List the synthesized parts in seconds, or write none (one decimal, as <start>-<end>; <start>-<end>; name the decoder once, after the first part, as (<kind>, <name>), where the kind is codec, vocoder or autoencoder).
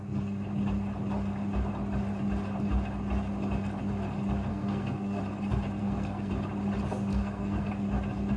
4.5-5.2 (codec, SNAC); 5.8-6.3; 7.1-7.7